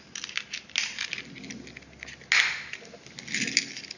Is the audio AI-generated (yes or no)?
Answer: no